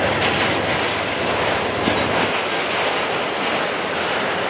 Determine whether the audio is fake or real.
real